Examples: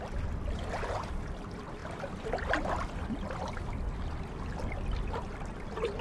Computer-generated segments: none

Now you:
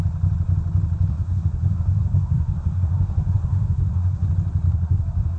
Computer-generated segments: 1.1-4.3 (codec, SNAC); 4.7-5.4

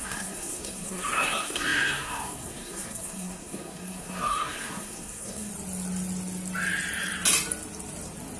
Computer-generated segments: 0.0-5.5 (codec, SNAC)

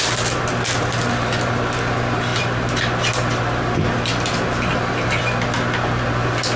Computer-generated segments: none

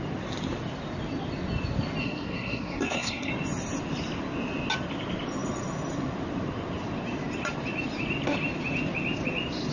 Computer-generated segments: 2.0-3.3 (codec, SNAC)